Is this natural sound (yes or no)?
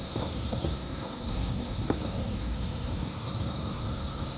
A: no